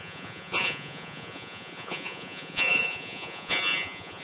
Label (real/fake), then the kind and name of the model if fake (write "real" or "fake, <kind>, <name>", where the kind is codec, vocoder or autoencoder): fake, vocoder, Vocos